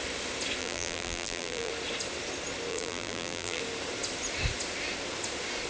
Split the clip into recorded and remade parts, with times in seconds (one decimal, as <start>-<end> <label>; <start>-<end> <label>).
0.0-0.6 recorded; 0.6-1.7 remade; 1.7-2.7 recorded; 2.7-3.6 remade; 3.6-5.7 recorded